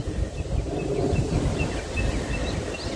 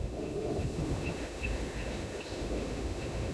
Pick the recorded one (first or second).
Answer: first